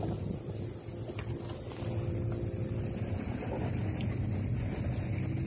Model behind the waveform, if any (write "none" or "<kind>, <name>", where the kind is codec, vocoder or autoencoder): none